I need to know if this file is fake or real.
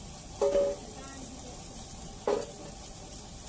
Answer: real